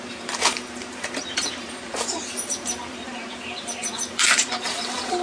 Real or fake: fake